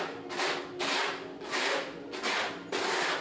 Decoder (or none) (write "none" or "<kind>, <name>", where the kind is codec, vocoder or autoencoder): none